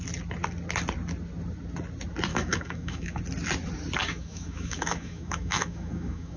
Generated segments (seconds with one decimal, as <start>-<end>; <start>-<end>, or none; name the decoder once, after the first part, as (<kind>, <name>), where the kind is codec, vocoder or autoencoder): 2.3-3.2 (autoencoder, DAC-VAE); 4.0-6.4